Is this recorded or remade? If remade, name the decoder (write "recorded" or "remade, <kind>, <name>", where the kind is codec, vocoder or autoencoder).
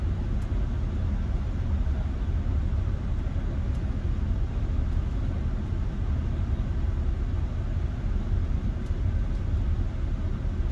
recorded